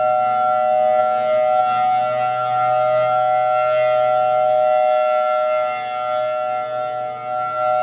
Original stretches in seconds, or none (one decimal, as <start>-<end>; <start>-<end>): 0.0-7.8